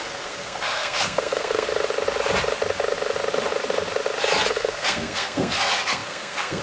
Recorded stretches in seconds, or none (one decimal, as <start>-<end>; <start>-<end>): 1.7-4.5